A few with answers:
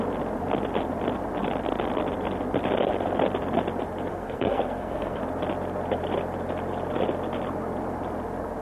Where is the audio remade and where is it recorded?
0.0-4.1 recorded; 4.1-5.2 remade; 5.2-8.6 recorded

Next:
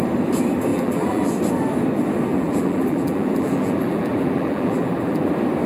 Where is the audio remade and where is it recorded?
0.0-0.7 recorded; 0.7-1.3 remade; 1.3-2.3 recorded; 2.3-5.3 remade; 5.3-5.7 recorded

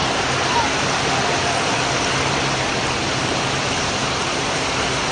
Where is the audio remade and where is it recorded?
0.0-3.1 recorded; 3.1-5.1 remade

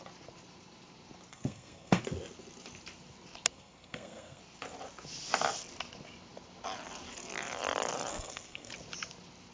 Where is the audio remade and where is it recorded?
0.0-1.3 recorded; 1.3-2.0 remade; 2.0-3.5 recorded; 3.5-4.4 remade; 4.4-8.1 recorded; 8.1-8.7 remade; 8.7-9.5 recorded